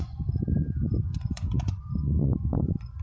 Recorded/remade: remade